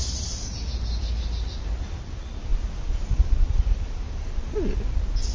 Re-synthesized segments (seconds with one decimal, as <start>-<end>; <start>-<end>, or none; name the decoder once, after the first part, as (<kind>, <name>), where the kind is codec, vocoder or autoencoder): none